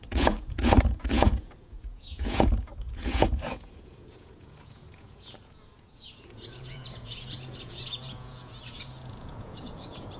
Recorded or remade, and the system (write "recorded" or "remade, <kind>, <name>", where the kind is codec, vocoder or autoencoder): remade, vocoder, Vocos